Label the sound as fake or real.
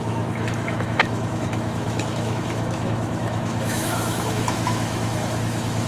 fake